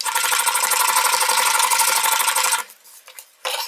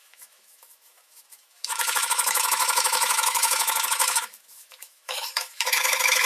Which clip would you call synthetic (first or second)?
second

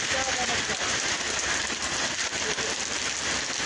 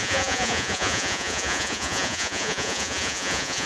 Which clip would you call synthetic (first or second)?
second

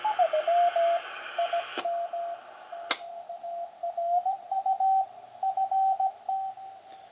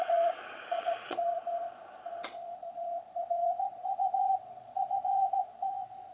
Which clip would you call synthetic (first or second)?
second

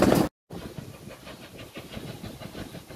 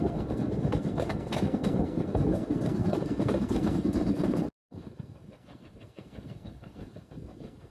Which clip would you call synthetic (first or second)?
second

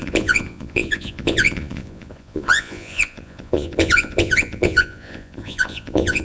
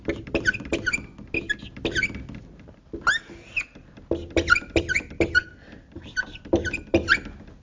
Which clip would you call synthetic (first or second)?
first